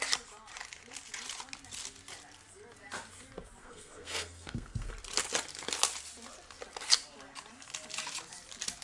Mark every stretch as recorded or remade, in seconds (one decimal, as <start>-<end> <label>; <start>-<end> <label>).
0.0-3.6 recorded; 3.6-4.9 remade; 4.9-8.8 recorded